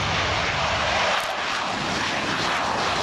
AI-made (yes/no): no